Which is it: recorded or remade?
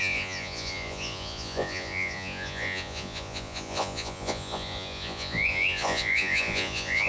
remade